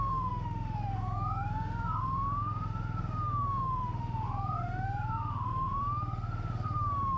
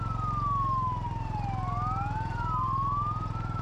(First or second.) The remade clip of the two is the first